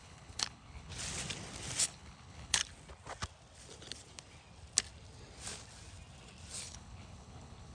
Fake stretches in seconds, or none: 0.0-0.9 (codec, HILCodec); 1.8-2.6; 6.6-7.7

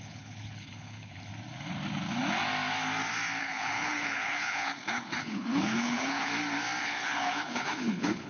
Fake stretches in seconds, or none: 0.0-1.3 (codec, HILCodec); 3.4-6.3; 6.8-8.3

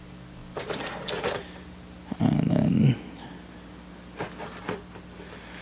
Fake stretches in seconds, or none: none

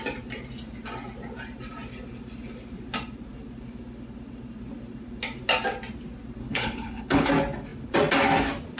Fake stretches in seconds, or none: 6.4-7.3 (codec, HILCodec)

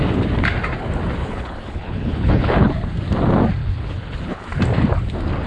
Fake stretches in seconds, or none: 1.2-2.7 (codec, HILCodec); 3.6-4.4

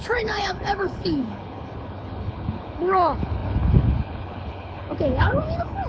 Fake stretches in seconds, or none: 0.0-5.9 (codec, HILCodec)

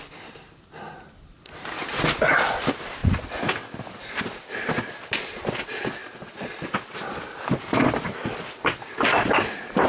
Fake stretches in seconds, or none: none